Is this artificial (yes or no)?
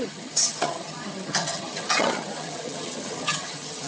yes